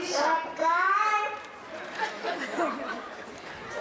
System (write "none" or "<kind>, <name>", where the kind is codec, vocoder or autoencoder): none